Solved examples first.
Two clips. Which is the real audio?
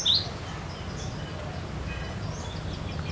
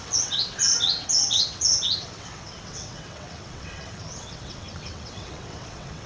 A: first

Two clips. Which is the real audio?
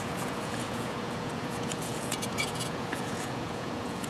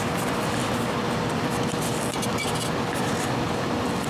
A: second